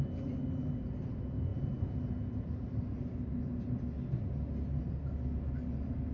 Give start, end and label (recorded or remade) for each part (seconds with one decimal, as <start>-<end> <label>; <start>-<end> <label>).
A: 0.0-6.1 recorded